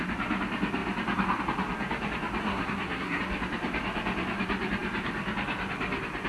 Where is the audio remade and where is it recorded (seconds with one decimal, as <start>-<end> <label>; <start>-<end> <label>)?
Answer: 0.0-2.4 recorded; 2.4-3.2 remade; 3.2-6.3 recorded